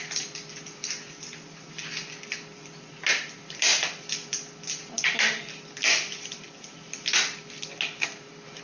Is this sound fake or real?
real